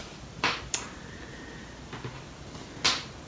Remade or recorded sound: recorded